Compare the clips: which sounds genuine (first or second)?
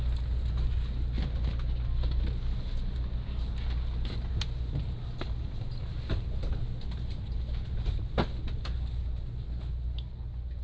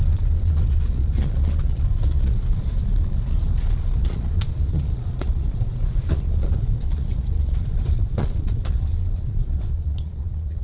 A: first